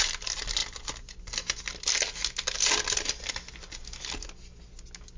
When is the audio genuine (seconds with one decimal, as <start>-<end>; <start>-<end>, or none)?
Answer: 0.0-5.2